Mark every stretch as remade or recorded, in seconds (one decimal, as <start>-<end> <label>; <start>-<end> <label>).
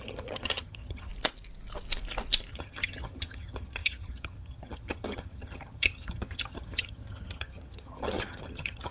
0.0-1.1 remade; 1.1-2.5 recorded; 2.5-8.9 remade